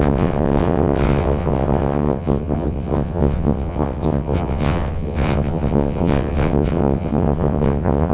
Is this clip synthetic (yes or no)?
yes